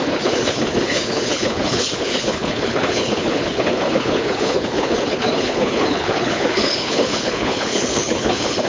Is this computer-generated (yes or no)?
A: yes